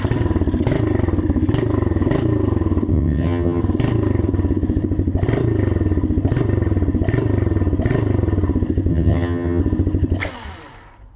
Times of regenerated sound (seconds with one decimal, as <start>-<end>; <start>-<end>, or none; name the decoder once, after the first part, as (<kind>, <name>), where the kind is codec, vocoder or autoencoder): 2.9-3.6 (vocoder, HiFi-GAN); 8.9-9.6